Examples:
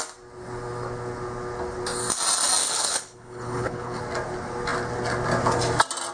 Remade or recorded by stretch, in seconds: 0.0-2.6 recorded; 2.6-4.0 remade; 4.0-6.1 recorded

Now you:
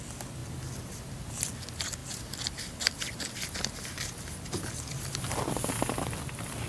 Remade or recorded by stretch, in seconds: 0.0-2.0 recorded; 2.0-5.7 remade; 5.7-6.7 recorded

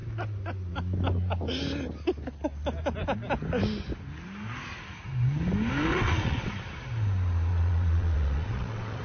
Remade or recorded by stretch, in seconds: 0.0-5.9 recorded; 5.9-6.5 remade; 6.5-7.5 recorded; 7.5-9.0 remade

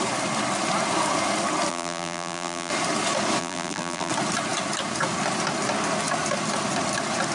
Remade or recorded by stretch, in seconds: 0.0-1.7 recorded; 1.7-2.7 remade; 2.7-3.4 recorded; 3.4-4.1 remade; 4.1-7.3 recorded

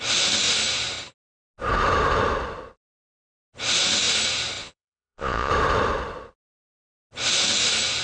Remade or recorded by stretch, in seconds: 0.0-4.6 recorded; 4.6-5.5 remade; 5.5-8.0 recorded